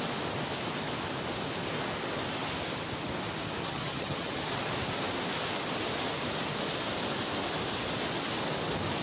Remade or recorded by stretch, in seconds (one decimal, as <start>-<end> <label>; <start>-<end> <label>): 0.0-3.6 recorded; 3.6-4.3 remade; 4.3-9.0 recorded